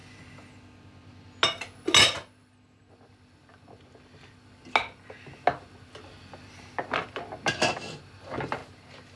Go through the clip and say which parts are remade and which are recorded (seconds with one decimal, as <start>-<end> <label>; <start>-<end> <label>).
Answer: 0.0-9.2 recorded